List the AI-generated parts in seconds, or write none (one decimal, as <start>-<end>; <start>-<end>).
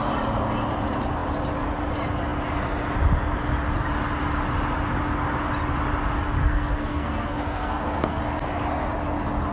6.4-8.2